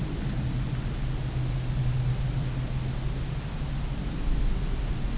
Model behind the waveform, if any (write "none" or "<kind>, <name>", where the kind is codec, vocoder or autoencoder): none